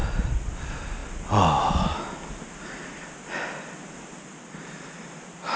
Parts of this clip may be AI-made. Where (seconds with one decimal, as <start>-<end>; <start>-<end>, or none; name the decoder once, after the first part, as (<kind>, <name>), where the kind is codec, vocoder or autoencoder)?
none